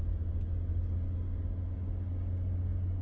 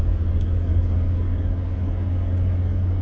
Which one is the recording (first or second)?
first